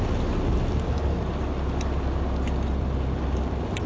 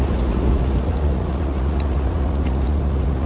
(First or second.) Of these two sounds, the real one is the first